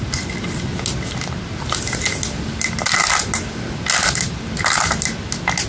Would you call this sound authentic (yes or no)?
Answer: yes